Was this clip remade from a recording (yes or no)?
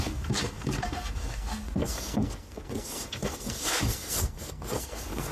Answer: yes